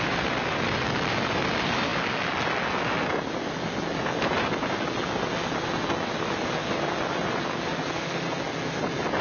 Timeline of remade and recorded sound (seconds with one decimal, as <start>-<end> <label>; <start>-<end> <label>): 0.0-9.2 recorded